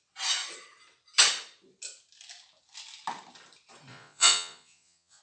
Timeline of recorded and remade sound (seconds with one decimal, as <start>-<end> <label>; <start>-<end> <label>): 0.0-3.9 recorded; 3.9-5.2 remade